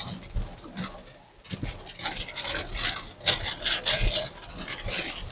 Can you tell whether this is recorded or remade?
recorded